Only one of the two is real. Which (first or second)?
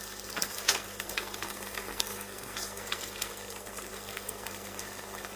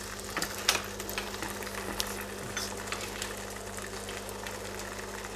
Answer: second